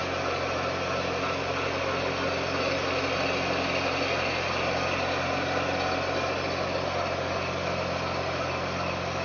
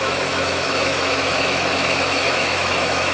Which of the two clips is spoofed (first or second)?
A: second